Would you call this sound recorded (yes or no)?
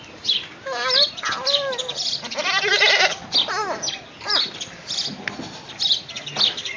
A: yes